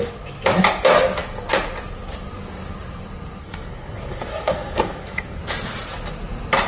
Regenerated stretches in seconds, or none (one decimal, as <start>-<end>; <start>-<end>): 3.4-5.4